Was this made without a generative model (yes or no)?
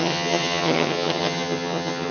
no